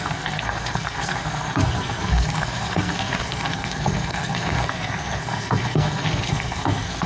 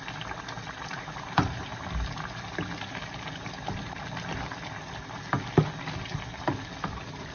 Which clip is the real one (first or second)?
second